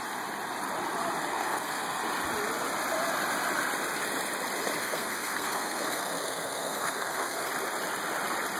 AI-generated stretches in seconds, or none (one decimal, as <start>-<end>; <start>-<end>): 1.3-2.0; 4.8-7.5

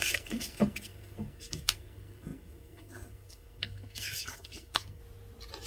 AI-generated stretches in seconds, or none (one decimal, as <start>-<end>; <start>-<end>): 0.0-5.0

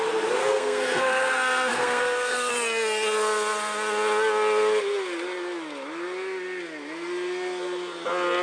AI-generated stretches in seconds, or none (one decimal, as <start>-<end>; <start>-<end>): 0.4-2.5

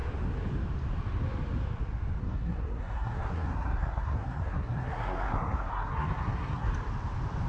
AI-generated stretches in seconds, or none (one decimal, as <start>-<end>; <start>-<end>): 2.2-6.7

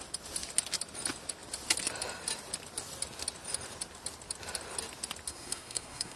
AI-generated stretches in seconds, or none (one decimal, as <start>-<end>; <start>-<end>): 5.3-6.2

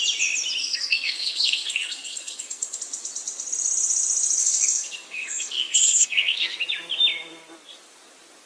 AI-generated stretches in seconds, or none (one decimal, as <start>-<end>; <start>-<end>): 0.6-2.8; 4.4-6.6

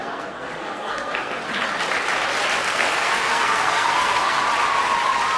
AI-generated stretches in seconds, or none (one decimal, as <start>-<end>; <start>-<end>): 0.0-1.5; 2.6-4.4

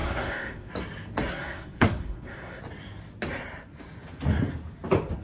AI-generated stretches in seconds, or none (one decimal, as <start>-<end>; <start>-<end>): 0.0-0.7; 1.3-2.6